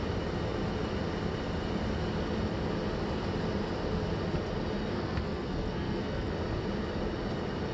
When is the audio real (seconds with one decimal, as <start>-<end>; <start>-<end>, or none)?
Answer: 0.0-4.9; 6.3-7.7

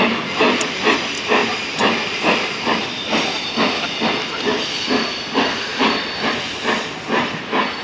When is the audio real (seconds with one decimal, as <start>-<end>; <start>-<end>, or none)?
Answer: 0.0-1.4; 2.6-5.7; 6.3-7.8

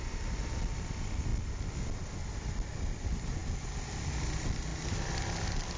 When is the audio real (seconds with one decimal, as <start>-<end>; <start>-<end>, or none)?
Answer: 0.0-5.8

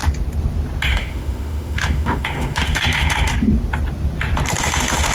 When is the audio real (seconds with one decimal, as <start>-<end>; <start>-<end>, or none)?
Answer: 0.0-0.9; 3.3-4.6